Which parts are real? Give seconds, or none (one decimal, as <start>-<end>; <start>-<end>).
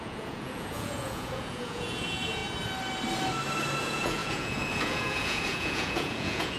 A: 2.4-3.8